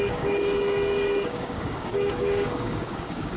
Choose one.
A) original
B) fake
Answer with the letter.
B